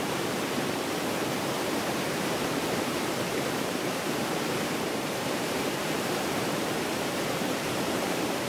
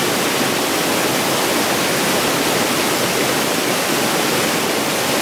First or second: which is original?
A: second